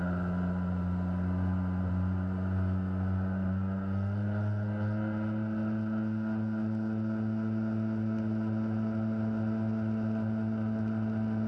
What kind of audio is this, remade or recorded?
recorded